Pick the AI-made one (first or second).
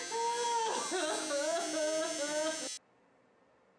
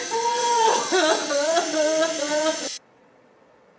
second